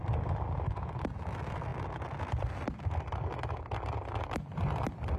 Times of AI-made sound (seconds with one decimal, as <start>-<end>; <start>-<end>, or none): none